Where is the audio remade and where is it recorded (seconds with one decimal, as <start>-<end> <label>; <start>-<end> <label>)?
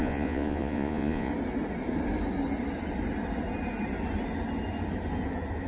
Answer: 0.0-1.3 remade; 1.3-5.7 recorded